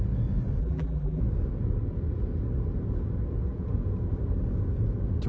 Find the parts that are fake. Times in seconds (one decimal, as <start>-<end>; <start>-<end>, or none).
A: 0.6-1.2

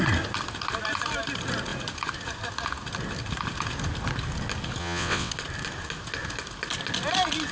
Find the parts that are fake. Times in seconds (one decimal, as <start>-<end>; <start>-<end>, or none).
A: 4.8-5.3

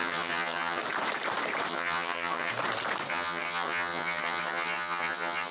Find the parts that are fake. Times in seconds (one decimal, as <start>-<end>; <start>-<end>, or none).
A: 0.0-0.8; 1.7-2.5; 3.1-5.5

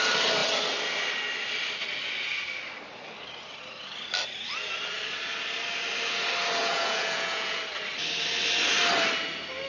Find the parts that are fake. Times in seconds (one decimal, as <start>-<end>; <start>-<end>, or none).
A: 6.6-7.6

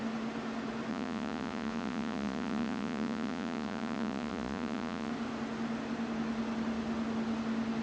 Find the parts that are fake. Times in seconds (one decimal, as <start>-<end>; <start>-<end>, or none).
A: 0.9-5.1

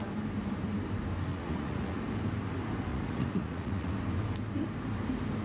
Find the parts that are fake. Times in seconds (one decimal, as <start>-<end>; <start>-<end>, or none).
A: 1.3-2.0; 2.9-3.9

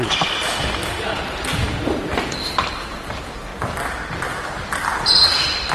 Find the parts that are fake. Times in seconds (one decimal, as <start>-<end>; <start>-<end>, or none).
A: 0.0-3.5; 4.5-5.7